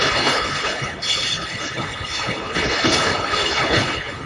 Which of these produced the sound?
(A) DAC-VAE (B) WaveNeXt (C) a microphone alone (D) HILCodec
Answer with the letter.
D